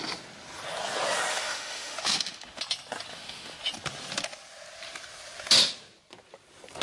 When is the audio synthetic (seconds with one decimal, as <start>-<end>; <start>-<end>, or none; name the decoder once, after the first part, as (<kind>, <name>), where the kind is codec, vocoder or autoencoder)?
1.3-2.6 (autoencoder, DAC-VAE); 3.1-3.6